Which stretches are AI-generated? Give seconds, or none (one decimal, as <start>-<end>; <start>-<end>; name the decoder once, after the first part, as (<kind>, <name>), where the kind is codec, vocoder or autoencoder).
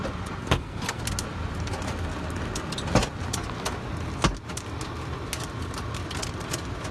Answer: 0.4-1.0 (codec, SNAC)